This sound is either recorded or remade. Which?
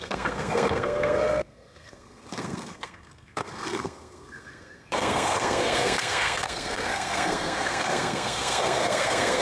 remade